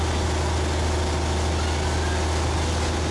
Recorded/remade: recorded